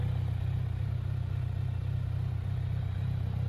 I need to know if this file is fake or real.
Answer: real